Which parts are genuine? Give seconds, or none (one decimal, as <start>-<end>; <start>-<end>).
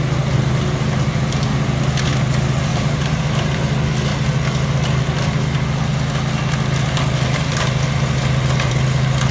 0.0-2.7; 3.2-9.3